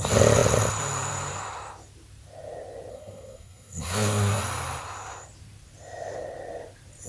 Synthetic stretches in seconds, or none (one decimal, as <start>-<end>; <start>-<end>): 2.9-4.4